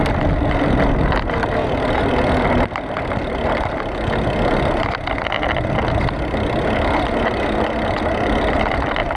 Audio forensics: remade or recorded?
recorded